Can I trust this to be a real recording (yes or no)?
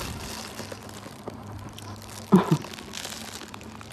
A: yes